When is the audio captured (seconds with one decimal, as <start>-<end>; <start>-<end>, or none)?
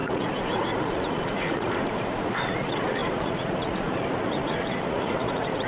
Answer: none